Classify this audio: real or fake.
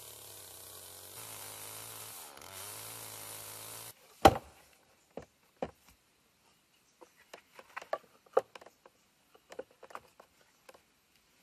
real